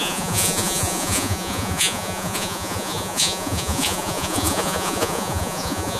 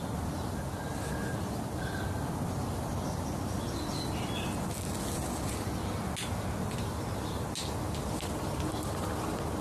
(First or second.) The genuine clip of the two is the second